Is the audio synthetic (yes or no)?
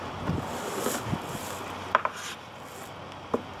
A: no